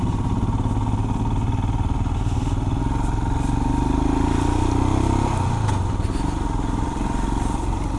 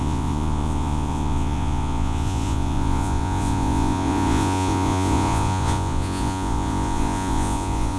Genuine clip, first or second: first